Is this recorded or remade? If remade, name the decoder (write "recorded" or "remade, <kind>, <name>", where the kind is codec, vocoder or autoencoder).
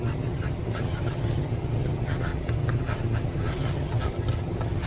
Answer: remade, vocoder, HiFi-GAN